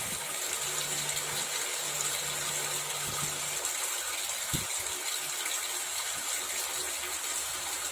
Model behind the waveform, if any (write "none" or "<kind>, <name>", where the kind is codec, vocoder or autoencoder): none